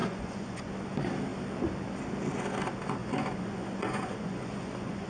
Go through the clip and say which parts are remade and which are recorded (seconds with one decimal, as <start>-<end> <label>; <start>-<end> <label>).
0.0-0.7 remade; 0.7-3.0 recorded; 3.0-5.1 remade